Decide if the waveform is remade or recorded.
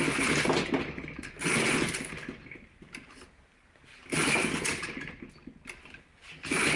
recorded